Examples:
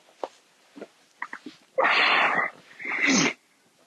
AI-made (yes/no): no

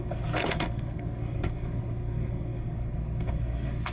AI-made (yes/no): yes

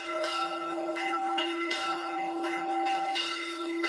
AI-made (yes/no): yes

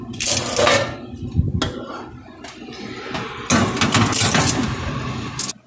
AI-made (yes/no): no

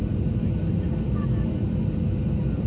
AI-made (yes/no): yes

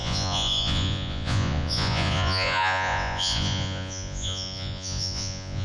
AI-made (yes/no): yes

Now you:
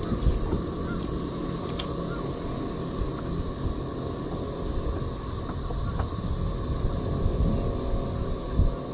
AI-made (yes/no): no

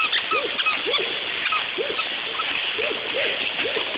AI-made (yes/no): no